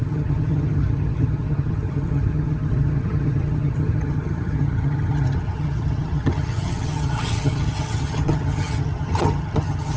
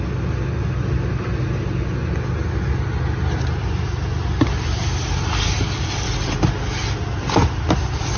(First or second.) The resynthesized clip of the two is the first